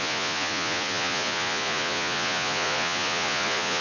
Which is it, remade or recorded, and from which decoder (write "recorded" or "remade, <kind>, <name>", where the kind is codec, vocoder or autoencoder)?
remade, vocoder, Vocos